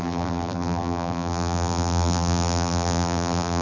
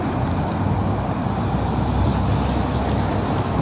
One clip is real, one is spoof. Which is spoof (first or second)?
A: first